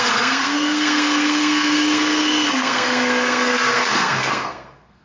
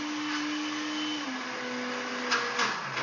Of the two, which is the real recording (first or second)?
second